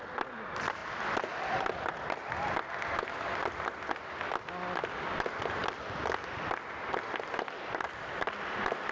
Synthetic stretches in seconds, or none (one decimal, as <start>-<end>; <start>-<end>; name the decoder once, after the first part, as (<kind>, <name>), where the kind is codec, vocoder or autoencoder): none

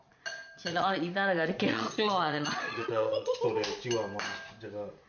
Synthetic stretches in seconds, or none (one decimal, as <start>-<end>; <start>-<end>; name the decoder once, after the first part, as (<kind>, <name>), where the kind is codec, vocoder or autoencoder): 0.6-3.4 (vocoder, Vocos)

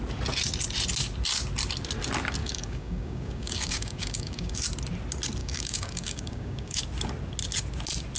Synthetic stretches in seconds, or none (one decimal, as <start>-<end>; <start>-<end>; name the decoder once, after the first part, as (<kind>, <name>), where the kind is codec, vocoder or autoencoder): 2.4-4.6 (codec, DAC); 5.4-6.8

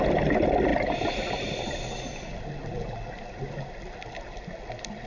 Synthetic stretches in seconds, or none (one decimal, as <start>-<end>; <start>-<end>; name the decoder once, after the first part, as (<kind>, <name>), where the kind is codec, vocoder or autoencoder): none